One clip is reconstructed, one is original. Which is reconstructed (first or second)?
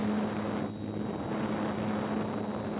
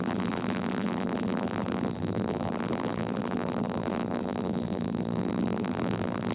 second